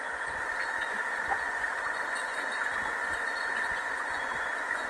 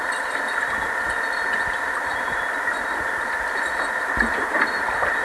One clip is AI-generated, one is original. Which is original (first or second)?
second